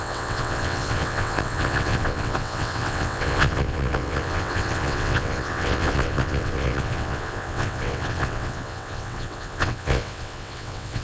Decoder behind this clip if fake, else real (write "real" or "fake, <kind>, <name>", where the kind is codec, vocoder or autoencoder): fake, vocoder, WaveNeXt